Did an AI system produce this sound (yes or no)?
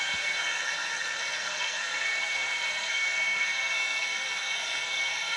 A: yes